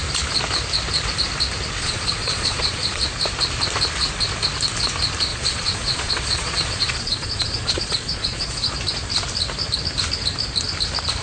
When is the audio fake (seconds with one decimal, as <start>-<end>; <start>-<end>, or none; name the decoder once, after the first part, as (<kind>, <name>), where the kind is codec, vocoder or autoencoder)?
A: 1.8-3.0 (vocoder, Vocos); 5.3-8.7